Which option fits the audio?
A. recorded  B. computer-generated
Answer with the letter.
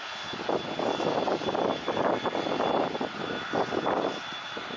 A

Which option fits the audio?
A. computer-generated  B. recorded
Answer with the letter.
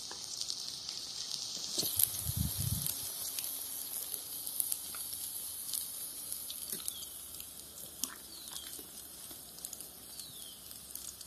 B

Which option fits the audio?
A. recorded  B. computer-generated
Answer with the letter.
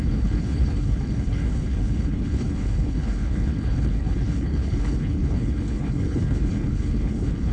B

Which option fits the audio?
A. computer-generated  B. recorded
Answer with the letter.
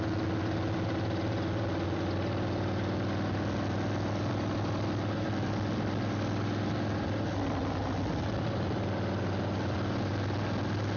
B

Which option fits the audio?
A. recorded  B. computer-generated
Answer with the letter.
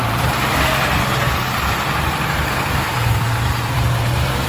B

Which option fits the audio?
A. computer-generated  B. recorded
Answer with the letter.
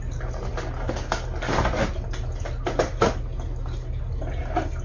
B